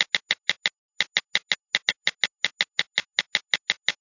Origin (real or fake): real